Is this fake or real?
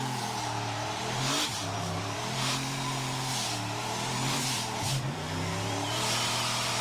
fake